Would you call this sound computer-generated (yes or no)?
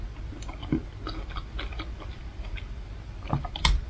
no